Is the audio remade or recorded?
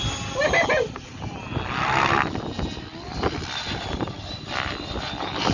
recorded